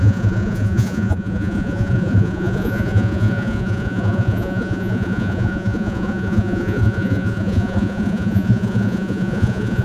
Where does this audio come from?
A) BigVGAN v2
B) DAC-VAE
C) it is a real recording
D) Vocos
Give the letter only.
D